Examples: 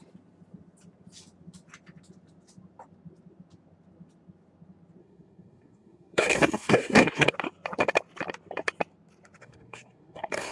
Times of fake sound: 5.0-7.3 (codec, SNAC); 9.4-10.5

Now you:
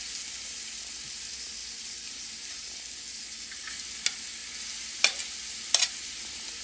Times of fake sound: 1.6-2.2 (vocoder, BigVGAN v2)